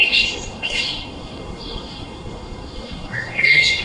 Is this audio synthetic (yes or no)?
yes